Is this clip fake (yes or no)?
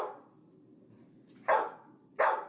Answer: no